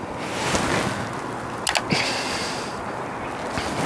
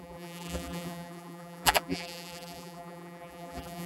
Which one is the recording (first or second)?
first